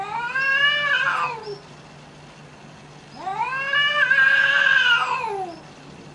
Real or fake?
real